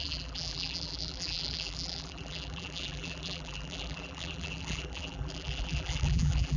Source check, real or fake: fake